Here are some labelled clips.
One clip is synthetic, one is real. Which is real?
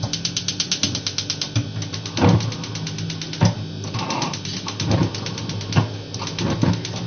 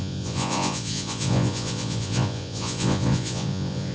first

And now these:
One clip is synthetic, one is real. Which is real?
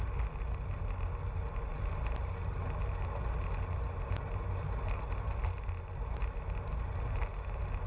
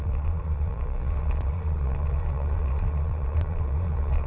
first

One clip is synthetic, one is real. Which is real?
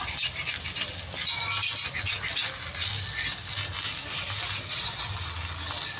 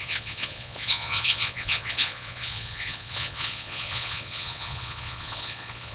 first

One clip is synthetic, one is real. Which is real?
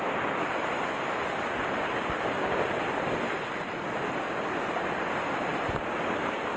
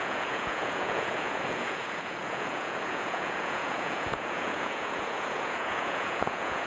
first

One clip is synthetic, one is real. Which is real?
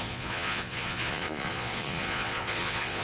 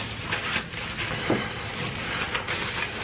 second